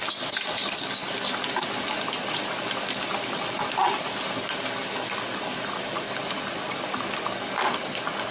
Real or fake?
real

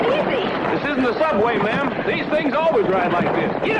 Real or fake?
real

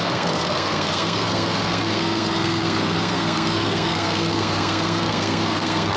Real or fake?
fake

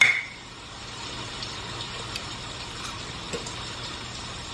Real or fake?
real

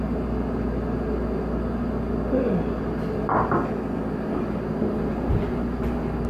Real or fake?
real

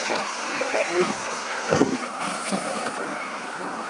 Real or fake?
fake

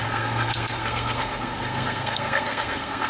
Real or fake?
fake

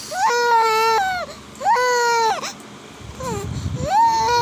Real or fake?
real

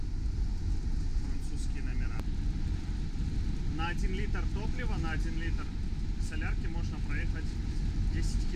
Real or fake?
real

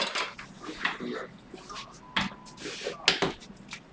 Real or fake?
real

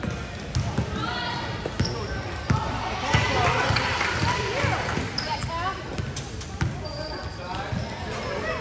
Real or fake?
real